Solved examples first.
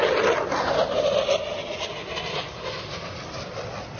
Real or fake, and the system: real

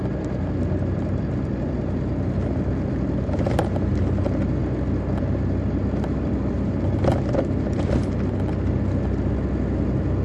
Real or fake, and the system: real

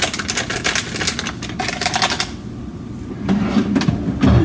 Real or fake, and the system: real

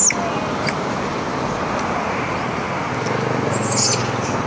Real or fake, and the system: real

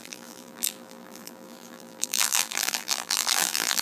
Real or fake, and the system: fake, vocoder, BigVGAN v2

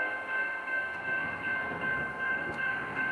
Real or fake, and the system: fake, codec, SNAC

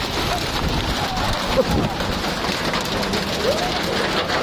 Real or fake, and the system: real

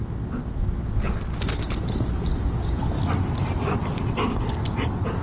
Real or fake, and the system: real